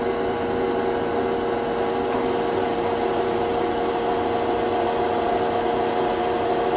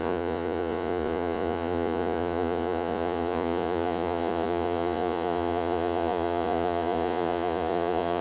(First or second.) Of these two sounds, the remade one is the second